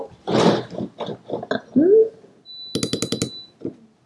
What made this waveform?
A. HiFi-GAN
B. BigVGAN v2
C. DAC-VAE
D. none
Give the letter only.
D